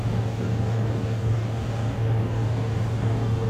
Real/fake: fake